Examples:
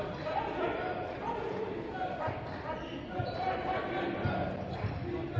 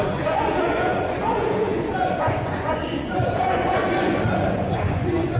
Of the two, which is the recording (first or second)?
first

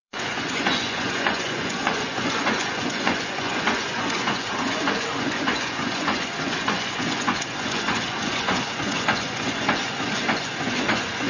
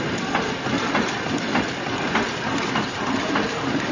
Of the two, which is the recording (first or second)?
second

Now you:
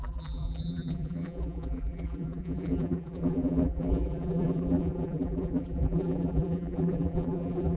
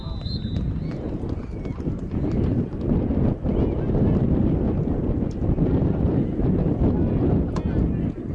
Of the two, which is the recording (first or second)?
second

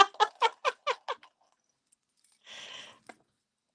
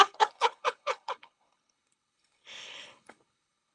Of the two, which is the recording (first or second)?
first